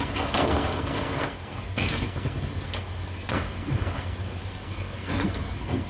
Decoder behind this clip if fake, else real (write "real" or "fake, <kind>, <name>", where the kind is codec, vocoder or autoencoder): fake, codec, SNAC